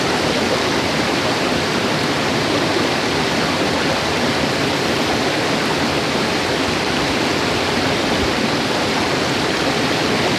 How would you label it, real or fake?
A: real